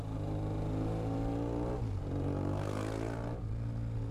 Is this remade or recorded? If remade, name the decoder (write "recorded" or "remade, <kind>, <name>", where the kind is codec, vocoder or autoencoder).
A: recorded